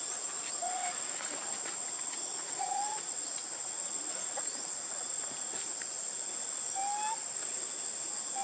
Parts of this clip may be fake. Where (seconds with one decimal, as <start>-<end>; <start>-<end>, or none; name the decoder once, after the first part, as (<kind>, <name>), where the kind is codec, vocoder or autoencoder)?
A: 0.6-5.6 (vocoder, Vocos)